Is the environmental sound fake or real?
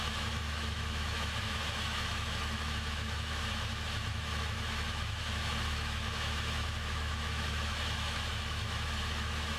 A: fake